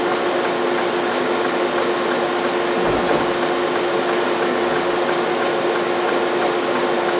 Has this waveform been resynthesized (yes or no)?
no